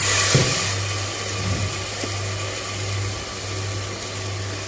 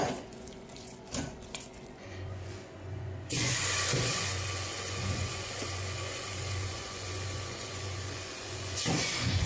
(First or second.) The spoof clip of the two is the second